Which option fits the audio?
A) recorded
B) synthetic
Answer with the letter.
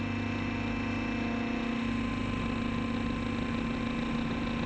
A